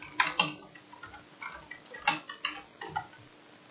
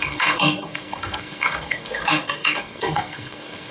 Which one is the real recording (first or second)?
first